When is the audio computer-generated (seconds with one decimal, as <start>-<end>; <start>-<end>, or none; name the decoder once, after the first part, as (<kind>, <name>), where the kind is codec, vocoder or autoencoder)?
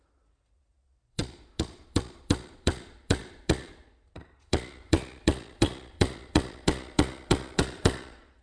0.0-8.4 (vocoder, Vocos)